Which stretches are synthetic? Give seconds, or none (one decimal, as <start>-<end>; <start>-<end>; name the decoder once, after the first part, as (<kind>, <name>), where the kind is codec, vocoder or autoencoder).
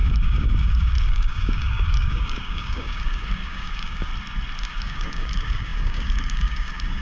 0.0-4.1 (codec, DAC); 4.6-7.0